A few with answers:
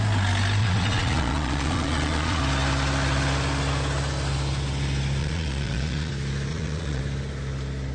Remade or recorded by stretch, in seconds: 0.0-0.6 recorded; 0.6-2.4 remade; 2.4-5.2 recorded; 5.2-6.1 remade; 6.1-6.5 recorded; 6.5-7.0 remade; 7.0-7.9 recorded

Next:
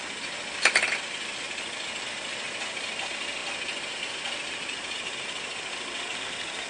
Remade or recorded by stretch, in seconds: 0.0-6.7 recorded

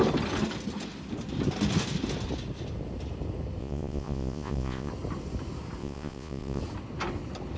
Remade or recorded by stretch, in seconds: 0.0-3.6 recorded; 3.6-4.9 remade; 4.9-5.8 recorded; 5.8-6.6 remade; 6.6-7.6 recorded

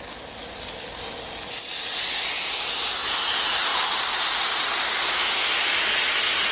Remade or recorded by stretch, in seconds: 0.0-6.5 recorded

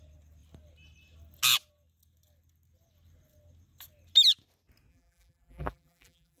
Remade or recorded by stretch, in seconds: 0.0-4.9 recorded; 4.9-6.4 remade